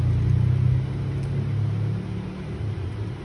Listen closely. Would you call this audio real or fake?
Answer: real